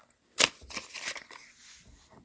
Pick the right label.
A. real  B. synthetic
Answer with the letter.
A